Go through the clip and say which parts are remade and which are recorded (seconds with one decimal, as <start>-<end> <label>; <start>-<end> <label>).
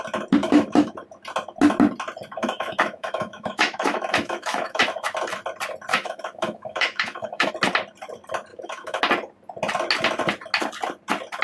0.0-0.4 recorded; 0.4-0.9 remade; 0.9-2.4 recorded; 2.4-4.8 remade; 4.8-5.9 recorded; 5.9-7.5 remade; 7.5-8.5 recorded; 8.5-9.0 remade; 9.0-11.4 recorded